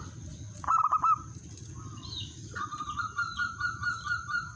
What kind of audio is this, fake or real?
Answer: real